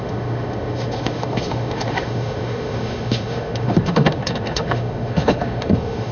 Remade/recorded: remade